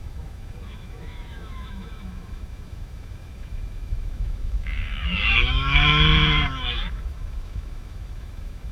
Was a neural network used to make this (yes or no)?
yes